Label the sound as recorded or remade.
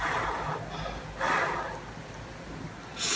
recorded